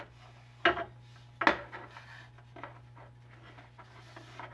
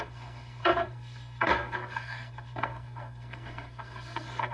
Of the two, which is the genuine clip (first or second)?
first